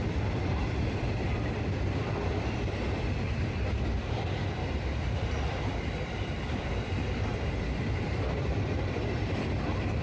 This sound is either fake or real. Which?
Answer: fake